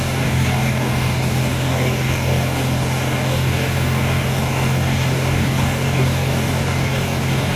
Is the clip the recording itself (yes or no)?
no